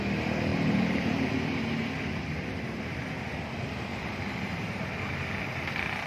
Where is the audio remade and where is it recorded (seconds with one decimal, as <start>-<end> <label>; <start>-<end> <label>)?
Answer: 0.0-0.5 recorded; 0.5-1.3 remade; 1.3-3.9 recorded; 3.9-4.9 remade; 4.9-6.1 recorded